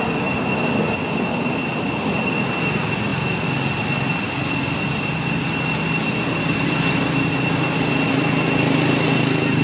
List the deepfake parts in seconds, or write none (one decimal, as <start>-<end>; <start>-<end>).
none